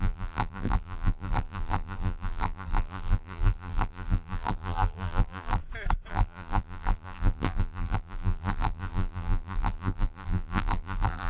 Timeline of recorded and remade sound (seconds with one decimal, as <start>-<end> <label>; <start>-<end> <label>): 0.0-5.6 remade; 5.6-6.1 recorded; 6.1-11.3 remade